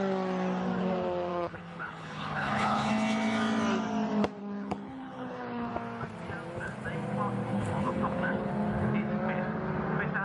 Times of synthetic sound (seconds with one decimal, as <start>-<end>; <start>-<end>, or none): 1.3-2.9; 4.4-5.7; 7.5-8.5